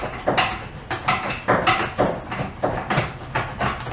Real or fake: real